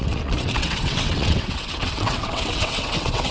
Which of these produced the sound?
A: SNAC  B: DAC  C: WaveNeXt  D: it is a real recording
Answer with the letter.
C